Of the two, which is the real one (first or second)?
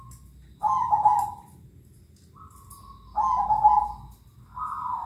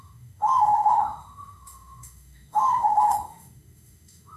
first